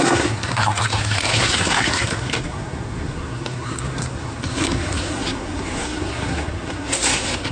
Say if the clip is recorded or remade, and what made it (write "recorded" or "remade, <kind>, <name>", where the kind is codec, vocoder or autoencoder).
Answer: remade, codec, SNAC